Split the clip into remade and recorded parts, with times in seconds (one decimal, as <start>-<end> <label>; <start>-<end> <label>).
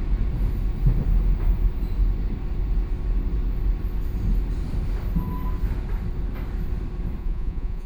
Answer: 0.0-7.2 recorded; 7.2-7.9 remade